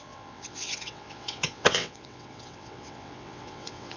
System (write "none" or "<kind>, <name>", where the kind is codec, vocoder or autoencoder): vocoder, WaveNeXt